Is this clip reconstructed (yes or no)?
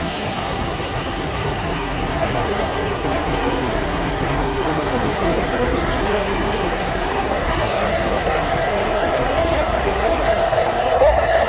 yes